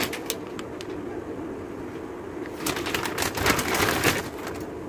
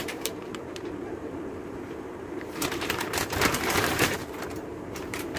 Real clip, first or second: first